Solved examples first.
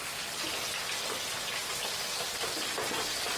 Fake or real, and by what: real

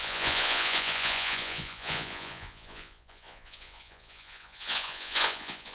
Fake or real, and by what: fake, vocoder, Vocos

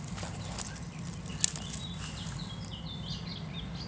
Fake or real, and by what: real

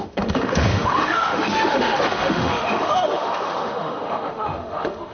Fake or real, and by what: fake, autoencoder, DAC-VAE